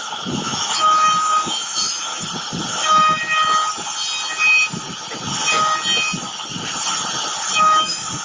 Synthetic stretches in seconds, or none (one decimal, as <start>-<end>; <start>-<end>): 0.0-2.1; 2.7-3.2; 7.6-8.2